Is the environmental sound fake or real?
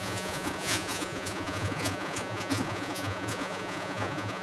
fake